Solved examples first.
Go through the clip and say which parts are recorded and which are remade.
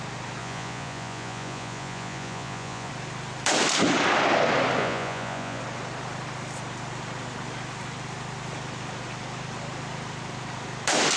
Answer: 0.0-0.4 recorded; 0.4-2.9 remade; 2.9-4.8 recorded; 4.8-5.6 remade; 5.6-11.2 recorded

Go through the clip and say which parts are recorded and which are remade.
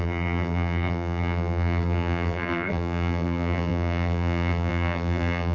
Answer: 0.0-5.5 remade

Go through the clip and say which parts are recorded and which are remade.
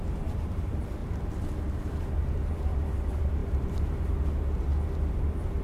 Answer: 0.0-1.0 remade; 1.0-2.0 recorded; 2.0-4.7 remade; 4.7-5.6 recorded